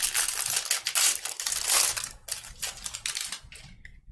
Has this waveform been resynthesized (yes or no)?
no